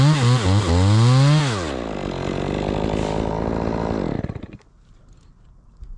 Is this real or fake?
real